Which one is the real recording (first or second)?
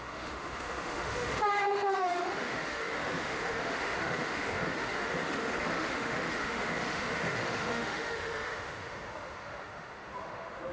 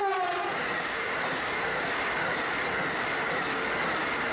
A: second